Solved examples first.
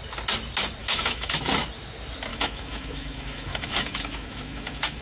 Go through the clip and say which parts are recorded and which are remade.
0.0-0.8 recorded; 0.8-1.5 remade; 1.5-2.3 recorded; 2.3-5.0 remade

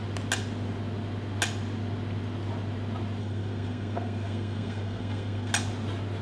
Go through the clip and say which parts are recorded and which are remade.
0.0-3.2 recorded; 3.2-5.5 remade; 5.5-6.2 recorded

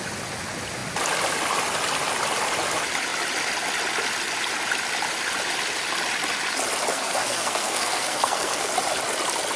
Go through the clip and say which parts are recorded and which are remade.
0.0-6.9 recorded; 6.9-8.7 remade; 8.7-9.6 recorded